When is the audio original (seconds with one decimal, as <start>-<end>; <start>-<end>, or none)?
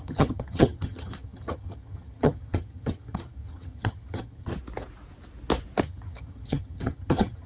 4.5-5.8